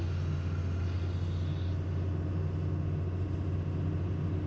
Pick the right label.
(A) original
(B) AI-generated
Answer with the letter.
A